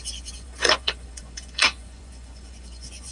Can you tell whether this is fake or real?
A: fake